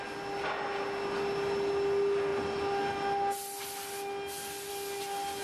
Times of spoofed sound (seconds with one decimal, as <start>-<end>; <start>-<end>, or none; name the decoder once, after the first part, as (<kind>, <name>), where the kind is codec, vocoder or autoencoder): none